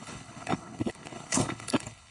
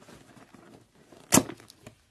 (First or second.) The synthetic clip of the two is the first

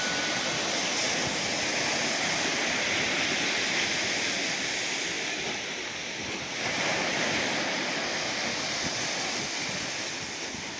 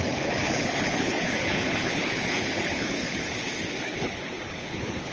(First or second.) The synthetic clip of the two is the second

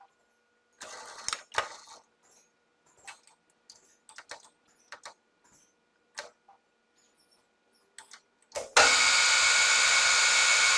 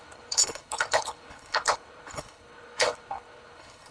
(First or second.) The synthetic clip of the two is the second